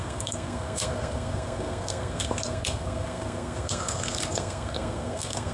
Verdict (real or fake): fake